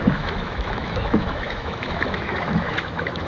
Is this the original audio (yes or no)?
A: no